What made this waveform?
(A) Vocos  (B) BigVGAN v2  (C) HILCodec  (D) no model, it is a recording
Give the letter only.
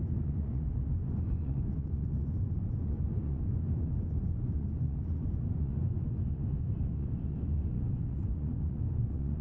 A